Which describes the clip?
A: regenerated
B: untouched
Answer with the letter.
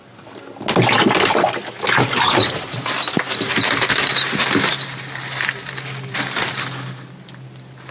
B